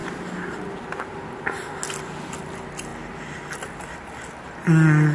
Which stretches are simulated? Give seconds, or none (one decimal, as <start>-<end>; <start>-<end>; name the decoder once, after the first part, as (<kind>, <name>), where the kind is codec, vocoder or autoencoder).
none